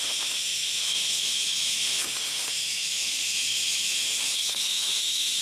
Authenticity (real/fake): fake